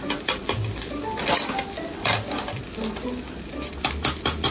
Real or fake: real